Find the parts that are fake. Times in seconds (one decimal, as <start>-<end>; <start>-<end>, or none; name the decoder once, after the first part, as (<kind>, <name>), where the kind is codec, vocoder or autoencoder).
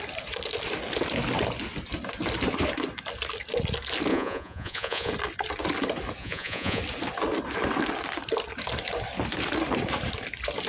4.1-5.1 (vocoder, Vocos); 6.2-6.8